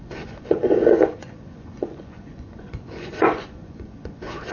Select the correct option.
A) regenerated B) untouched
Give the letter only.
A